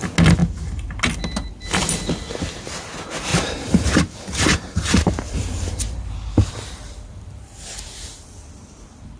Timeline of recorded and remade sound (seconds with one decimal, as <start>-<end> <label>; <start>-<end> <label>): 0.0-0.4 recorded; 0.4-1.0 remade; 1.0-3.3 recorded; 3.3-6.5 remade; 6.5-9.2 recorded